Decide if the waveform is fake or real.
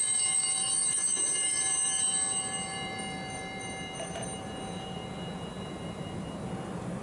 fake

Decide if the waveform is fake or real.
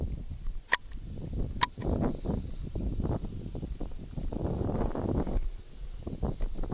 real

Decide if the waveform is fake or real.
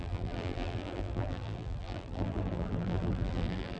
fake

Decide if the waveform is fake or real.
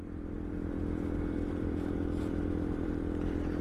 fake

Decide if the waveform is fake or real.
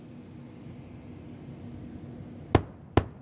real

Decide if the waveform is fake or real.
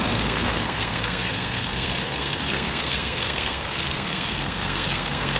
fake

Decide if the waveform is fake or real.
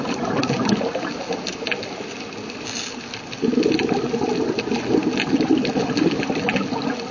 real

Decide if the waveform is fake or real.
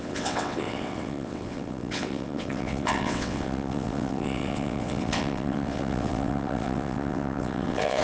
fake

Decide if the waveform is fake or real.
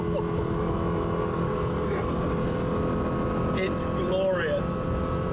real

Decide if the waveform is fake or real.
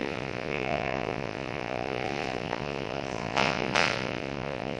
fake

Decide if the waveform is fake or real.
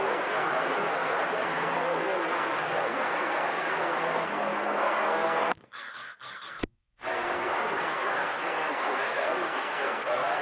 fake